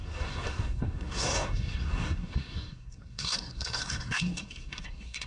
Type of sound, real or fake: fake